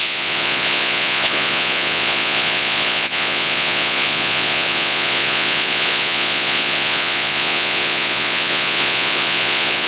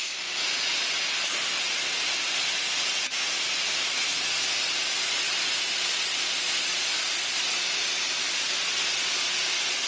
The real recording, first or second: second